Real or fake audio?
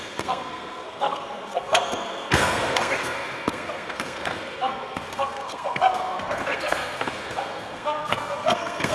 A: fake